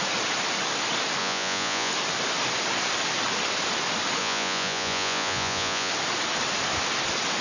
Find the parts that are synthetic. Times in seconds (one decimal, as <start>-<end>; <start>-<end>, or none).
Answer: 1.2-1.9; 4.2-5.9